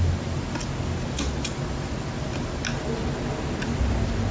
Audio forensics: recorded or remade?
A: recorded